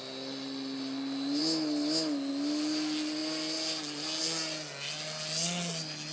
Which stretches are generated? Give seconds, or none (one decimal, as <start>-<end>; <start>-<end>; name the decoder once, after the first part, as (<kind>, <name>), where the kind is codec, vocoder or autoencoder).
none